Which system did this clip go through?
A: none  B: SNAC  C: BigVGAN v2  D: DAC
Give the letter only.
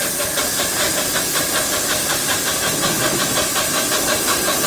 A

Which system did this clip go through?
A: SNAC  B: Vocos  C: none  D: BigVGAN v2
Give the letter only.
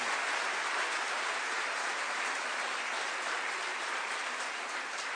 C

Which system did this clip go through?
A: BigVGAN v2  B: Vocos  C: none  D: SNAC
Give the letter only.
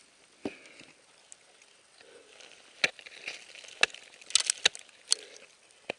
C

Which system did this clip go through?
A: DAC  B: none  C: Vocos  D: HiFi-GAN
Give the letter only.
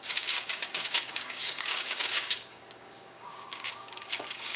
A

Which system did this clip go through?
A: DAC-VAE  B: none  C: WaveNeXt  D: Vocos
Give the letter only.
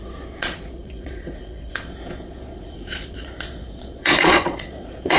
D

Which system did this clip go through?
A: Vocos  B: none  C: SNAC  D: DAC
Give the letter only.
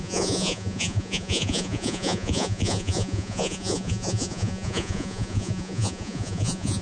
A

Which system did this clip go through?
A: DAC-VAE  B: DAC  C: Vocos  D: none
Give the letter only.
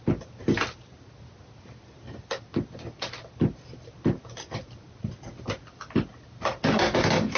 D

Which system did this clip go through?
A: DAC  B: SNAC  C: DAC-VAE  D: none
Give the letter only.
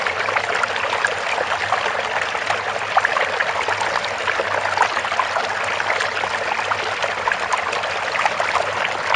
D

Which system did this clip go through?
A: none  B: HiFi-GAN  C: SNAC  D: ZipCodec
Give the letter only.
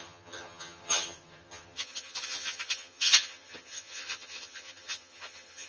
B